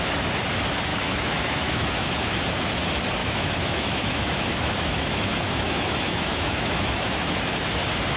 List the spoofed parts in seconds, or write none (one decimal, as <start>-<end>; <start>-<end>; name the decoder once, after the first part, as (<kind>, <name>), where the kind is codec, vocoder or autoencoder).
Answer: 0.9-2.5 (autoencoder, DAC-VAE); 3.2-7.4